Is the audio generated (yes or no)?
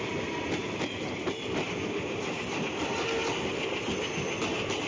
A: no